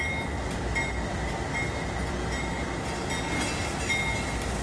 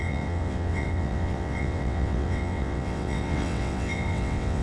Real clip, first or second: first